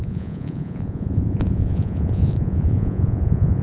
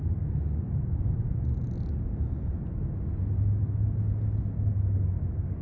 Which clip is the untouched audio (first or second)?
second